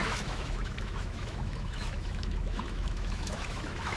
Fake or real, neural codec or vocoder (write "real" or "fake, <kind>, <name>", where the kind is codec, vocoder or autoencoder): fake, autoencoder, DAC-VAE